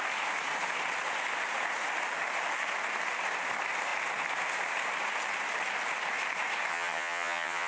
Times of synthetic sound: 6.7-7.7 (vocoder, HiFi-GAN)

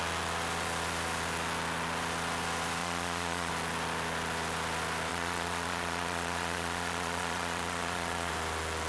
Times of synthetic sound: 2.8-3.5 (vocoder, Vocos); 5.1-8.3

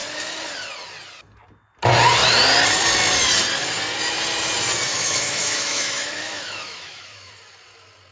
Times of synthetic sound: 4.9-7.3 (autoencoder, DAC-VAE)

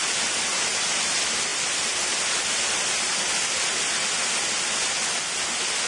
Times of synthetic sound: none

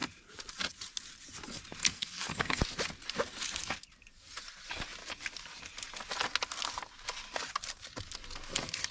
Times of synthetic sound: 1.8-2.6 (codec, SNAC)